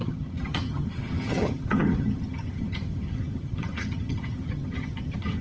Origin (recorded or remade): remade